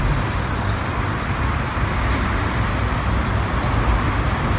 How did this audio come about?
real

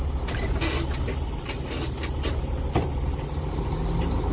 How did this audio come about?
real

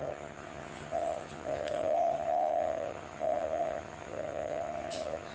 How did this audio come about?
fake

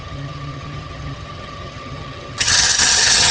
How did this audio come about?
fake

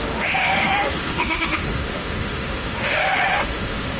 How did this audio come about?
fake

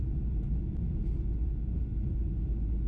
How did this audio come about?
real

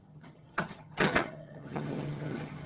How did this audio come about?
fake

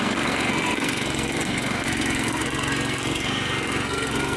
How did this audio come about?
fake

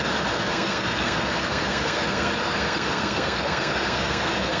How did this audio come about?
fake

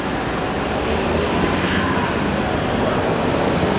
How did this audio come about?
real